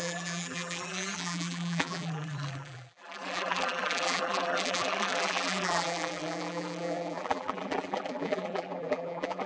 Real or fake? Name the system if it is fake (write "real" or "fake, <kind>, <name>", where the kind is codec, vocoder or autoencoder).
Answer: fake, vocoder, BigVGAN v2